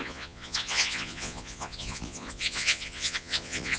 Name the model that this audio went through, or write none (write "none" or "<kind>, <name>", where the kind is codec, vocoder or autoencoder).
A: vocoder, Vocos